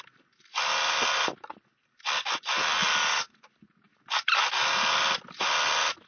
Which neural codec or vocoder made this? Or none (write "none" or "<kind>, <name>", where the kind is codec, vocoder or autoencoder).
none